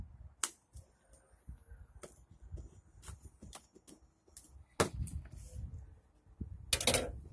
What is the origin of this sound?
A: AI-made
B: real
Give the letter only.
B